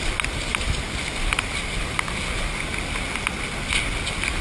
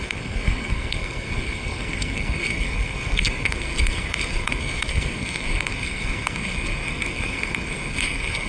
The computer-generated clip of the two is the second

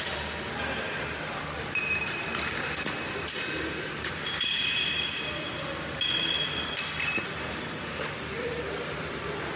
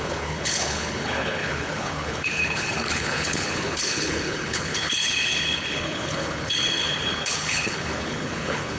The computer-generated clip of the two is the second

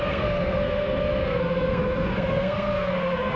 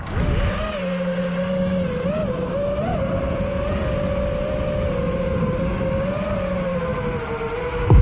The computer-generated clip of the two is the first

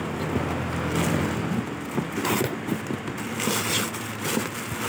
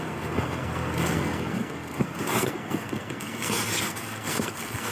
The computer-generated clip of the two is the second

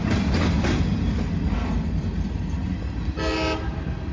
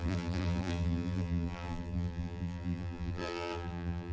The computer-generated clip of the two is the second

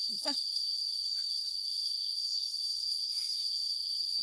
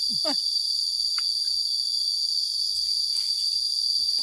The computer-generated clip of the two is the first